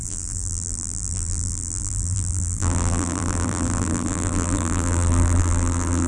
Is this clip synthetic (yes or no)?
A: yes